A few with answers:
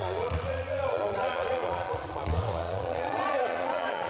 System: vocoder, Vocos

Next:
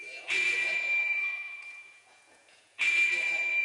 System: vocoder, Vocos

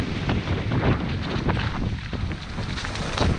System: none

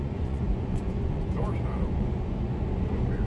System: vocoder, Vocos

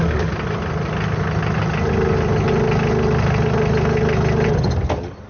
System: none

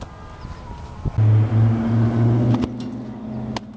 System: none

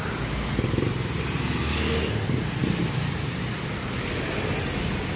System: none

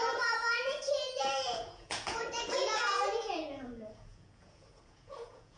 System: vocoder, Vocos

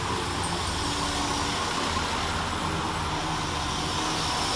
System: none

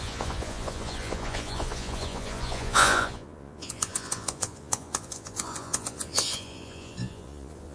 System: vocoder, Vocos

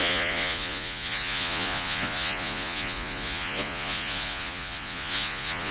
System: vocoder, Vocos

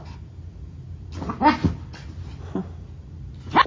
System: none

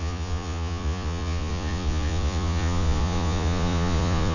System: vocoder, Vocos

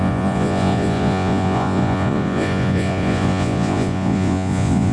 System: vocoder, Vocos